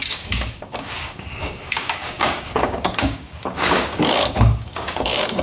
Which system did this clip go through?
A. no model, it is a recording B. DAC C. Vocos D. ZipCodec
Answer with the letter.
B